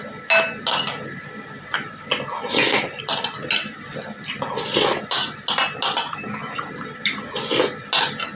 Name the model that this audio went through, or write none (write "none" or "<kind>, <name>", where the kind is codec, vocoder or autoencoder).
none